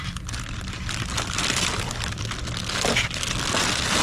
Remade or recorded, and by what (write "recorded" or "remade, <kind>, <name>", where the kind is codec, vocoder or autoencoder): recorded